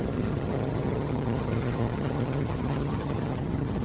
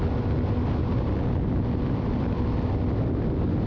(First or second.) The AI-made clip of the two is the first